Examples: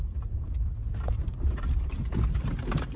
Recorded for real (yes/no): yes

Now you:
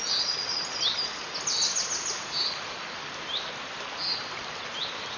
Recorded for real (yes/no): yes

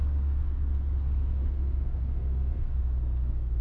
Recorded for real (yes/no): no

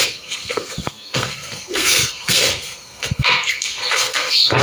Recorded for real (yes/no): no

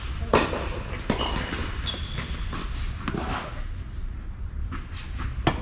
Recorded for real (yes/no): yes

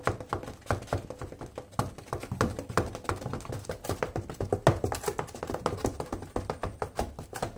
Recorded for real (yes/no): yes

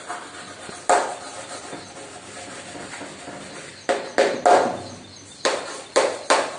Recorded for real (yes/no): yes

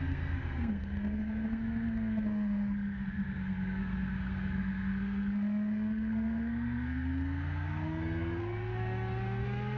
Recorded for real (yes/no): no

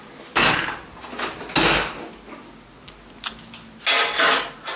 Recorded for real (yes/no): yes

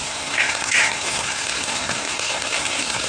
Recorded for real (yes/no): no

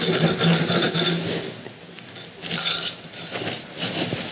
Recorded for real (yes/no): yes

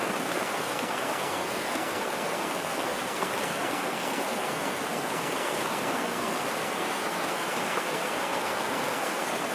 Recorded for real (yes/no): no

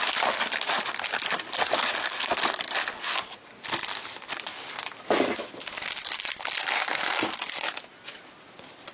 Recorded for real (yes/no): yes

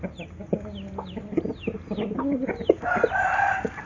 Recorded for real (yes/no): yes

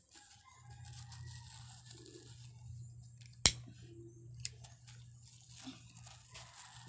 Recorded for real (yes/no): yes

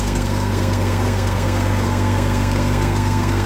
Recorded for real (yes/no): no